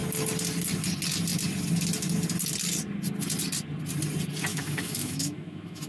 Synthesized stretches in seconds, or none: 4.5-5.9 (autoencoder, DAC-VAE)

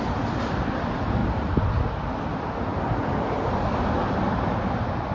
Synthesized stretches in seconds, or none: none

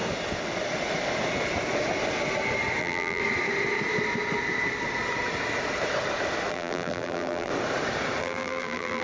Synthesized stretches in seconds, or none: 2.8-3.2 (vocoder, BigVGAN v2); 6.5-7.5; 8.2-9.0

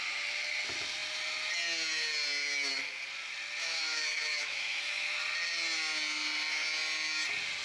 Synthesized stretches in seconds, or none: 3.6-5.2 (autoencoder, DAC-VAE)

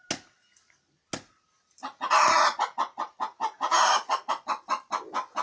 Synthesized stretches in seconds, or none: 1.8-4.3 (vocoder, Vocos)